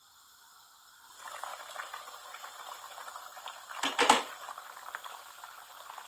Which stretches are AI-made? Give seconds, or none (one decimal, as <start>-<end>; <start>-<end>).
none